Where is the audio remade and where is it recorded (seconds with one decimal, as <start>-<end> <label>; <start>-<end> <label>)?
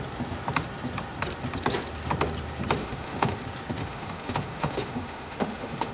0.0-2.8 recorded; 2.8-3.4 remade; 3.4-3.8 recorded; 3.8-5.9 remade